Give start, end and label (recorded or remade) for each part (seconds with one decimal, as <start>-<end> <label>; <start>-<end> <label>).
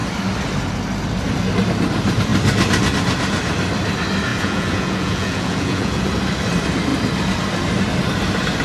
0.0-4.3 recorded; 4.3-6.1 remade; 6.1-8.6 recorded